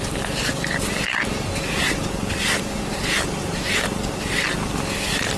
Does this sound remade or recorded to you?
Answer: recorded